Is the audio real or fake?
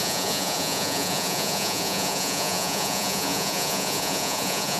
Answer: fake